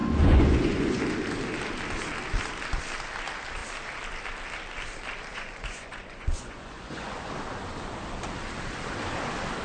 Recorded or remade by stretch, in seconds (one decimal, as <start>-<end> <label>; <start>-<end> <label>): 0.0-1.0 remade; 1.0-5.3 recorded; 5.3-7.3 remade; 7.3-9.6 recorded